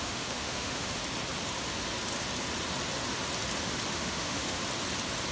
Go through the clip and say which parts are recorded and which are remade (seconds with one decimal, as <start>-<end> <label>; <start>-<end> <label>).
0.0-1.0 remade; 1.0-3.9 recorded; 3.9-4.6 remade; 4.6-5.3 recorded